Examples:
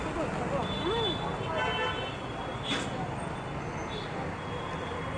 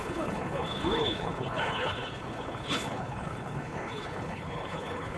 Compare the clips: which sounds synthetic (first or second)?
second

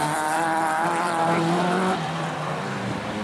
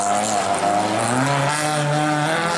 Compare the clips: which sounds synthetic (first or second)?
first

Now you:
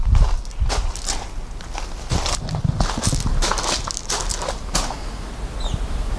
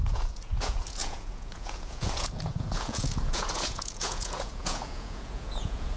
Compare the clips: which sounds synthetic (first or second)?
second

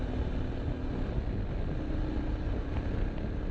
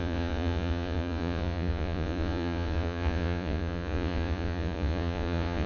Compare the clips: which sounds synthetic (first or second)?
second